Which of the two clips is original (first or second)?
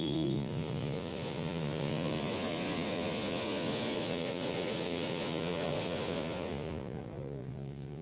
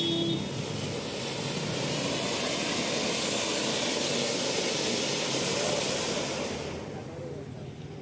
second